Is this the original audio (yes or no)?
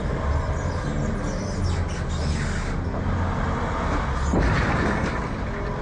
yes